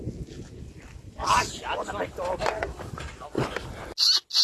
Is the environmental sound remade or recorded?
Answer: recorded